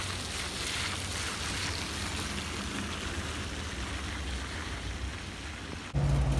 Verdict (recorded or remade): recorded